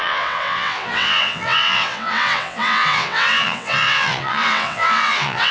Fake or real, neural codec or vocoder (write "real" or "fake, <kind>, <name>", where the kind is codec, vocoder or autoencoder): fake, vocoder, WaveNeXt